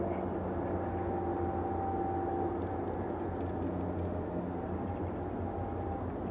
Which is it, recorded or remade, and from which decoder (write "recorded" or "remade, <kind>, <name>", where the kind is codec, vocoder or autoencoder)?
recorded